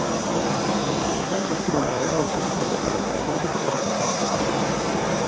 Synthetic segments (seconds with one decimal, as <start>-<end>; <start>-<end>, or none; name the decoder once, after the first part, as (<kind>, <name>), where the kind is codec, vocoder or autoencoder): 1.2-4.4 (codec, SNAC)